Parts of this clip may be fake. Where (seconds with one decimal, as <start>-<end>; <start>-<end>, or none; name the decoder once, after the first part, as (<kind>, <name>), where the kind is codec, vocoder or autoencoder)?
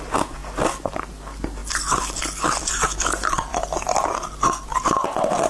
none